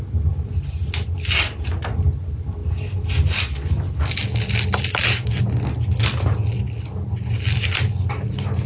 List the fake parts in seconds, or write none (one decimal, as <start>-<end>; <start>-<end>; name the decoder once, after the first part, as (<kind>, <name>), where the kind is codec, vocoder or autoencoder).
none